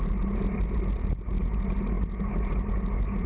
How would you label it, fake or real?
real